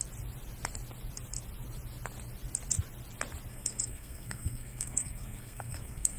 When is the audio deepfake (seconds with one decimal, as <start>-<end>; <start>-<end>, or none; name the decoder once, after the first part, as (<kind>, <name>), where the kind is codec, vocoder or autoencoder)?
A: 3.5-6.2 (codec, SNAC)